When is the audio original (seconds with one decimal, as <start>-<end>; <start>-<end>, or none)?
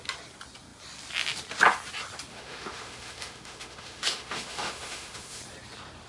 0.0-2.3; 5.4-6.1